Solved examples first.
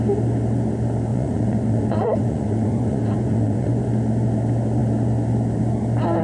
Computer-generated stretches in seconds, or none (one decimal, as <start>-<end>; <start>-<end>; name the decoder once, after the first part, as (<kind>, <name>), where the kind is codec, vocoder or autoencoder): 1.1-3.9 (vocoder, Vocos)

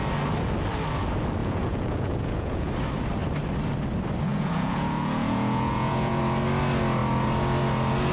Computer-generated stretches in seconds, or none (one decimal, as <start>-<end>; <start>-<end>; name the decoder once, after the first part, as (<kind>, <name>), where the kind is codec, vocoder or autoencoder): 1.4-2.7 (vocoder, Vocos); 4.3-6.2

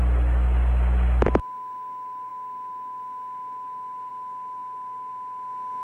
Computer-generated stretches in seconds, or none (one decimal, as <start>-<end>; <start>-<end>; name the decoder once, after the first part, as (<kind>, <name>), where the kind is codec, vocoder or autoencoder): none

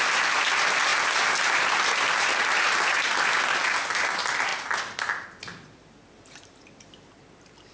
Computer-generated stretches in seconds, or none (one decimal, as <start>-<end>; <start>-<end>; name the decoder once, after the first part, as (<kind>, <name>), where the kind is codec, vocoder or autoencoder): none